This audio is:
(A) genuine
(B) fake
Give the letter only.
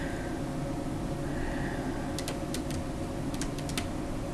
A